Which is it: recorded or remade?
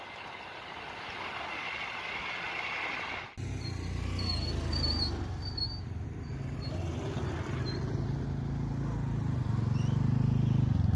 recorded